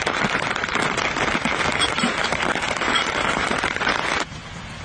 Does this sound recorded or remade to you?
recorded